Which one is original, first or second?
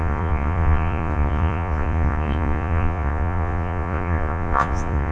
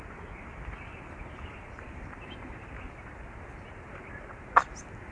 second